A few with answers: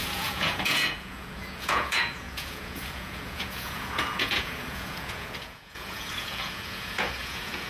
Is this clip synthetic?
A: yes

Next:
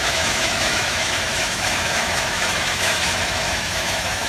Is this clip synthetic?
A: yes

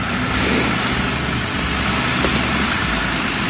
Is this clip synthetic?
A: no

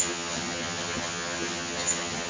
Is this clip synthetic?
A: yes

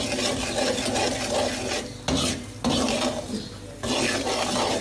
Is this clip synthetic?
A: no